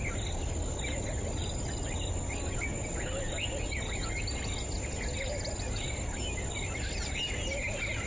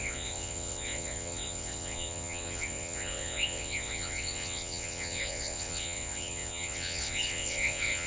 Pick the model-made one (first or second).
second